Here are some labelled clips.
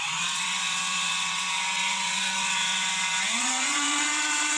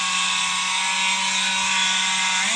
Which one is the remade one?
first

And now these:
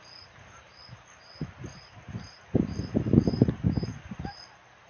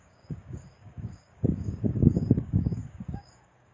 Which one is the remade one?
second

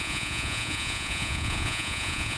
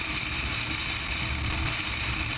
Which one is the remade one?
first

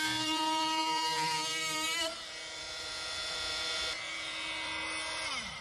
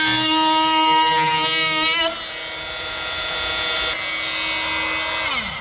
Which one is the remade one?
first